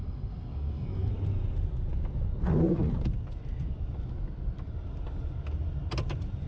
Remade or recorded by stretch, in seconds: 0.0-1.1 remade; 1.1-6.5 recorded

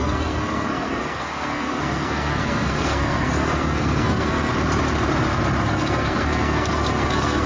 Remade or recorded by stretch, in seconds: 0.0-4.5 remade; 4.5-5.7 recorded; 5.7-7.5 remade

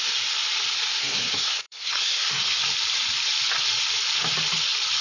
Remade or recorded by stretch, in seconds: 0.0-1.0 recorded; 1.0-2.6 remade; 2.6-5.0 recorded

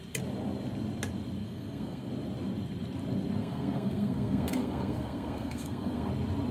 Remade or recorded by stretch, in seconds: 0.0-1.4 recorded; 1.4-2.1 remade; 2.1-3.4 recorded; 3.4-6.1 remade; 6.1-6.5 recorded

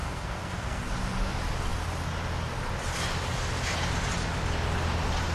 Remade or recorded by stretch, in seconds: 0.0-0.9 remade; 0.9-5.3 recorded

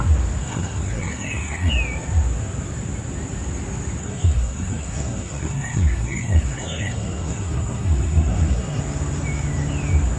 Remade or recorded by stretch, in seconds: 0.0-0.4 recorded; 0.4-1.7 remade; 1.7-4.0 recorded; 4.0-8.8 remade; 8.8-10.2 recorded